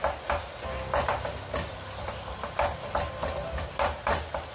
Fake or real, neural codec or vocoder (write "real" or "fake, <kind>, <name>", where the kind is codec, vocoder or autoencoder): real